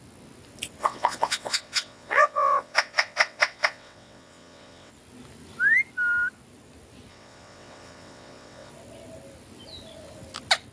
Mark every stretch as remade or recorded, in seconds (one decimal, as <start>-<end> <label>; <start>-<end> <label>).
0.0-0.8 recorded; 0.8-4.9 remade; 4.9-7.1 recorded; 7.1-8.7 remade; 8.7-10.7 recorded